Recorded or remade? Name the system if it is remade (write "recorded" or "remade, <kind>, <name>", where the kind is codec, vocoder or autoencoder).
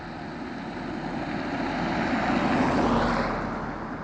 recorded